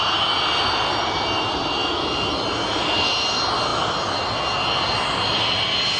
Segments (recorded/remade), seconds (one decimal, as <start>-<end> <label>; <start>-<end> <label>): 0.0-6.0 remade